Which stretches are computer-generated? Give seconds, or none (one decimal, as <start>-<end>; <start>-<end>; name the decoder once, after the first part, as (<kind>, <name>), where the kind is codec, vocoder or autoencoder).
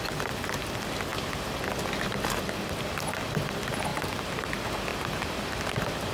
3.9-4.5 (vocoder, BigVGAN v2); 4.9-5.6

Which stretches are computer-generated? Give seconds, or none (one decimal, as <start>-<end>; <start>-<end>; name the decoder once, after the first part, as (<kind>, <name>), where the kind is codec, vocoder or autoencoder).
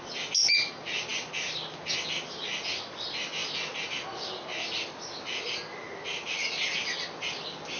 none